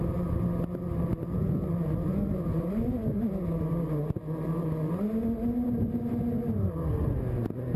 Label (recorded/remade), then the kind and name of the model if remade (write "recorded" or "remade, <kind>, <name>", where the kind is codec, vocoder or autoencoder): recorded